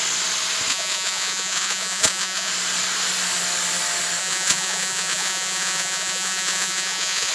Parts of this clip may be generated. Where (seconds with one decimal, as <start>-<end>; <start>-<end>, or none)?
0.7-2.5; 4.2-7.3